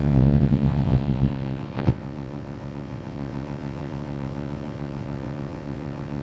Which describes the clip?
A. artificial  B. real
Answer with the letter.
A